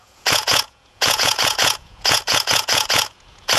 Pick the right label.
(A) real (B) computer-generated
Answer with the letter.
B